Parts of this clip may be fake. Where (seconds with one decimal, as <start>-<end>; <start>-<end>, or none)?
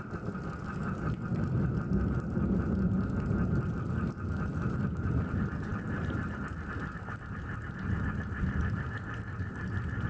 none